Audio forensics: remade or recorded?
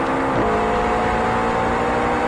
recorded